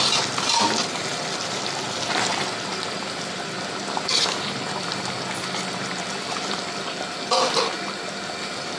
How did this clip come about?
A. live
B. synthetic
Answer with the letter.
A